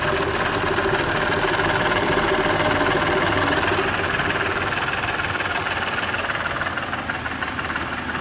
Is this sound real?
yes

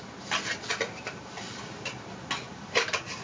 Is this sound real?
yes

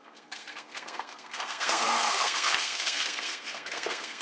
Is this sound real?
no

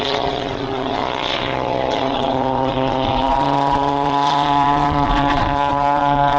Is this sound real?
no